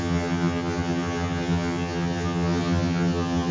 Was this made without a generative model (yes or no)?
no